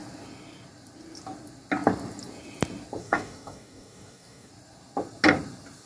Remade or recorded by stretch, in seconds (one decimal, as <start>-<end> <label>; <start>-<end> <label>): 0.0-3.0 recorded; 3.0-4.5 remade; 4.5-5.9 recorded